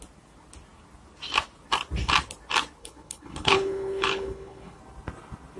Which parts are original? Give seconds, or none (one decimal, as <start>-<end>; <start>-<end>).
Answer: 0.0-2.8; 4.8-5.6